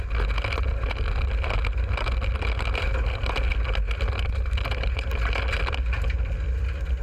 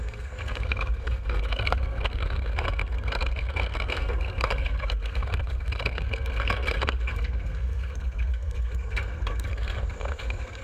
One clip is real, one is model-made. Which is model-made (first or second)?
second